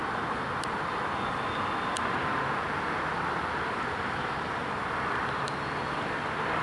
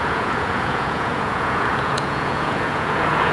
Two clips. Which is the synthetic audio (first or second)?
second